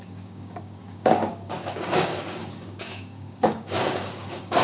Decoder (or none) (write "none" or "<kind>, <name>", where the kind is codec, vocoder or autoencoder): codec, DAC